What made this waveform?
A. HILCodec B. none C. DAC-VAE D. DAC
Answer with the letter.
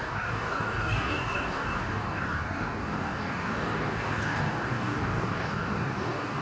D